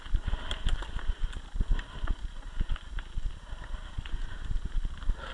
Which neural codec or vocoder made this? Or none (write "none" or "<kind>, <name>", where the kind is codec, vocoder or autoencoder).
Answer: none